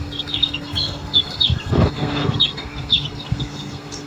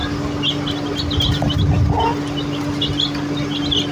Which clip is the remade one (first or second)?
first